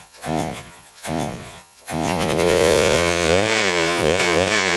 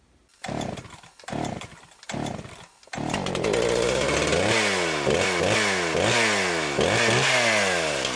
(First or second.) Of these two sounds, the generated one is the first